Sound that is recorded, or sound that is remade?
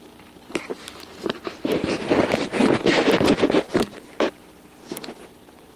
remade